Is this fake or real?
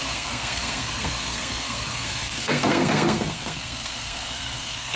fake